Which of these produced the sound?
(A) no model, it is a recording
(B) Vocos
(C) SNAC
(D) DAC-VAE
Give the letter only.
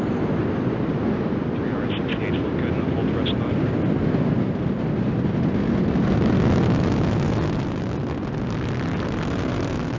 A